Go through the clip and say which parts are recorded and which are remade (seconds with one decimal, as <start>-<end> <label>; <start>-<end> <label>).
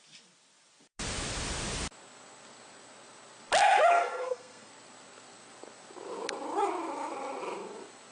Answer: 0.0-3.9 recorded; 3.9-4.7 remade; 4.7-8.1 recorded